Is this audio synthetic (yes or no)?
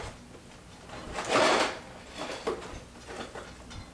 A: no